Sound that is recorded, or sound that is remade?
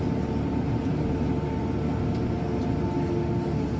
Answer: recorded